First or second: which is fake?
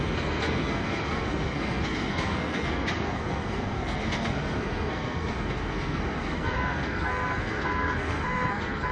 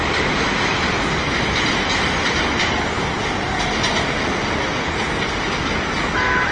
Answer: first